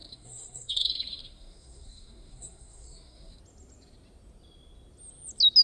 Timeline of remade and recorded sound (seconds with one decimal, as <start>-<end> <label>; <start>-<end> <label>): 0.0-3.4 remade; 3.4-5.6 recorded